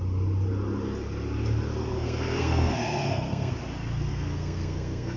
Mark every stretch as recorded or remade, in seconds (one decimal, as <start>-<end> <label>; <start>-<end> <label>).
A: 0.0-1.8 recorded; 1.8-3.5 remade; 3.5-4.1 recorded; 4.1-5.2 remade